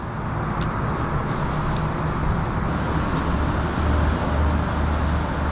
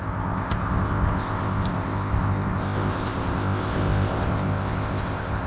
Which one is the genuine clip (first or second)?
first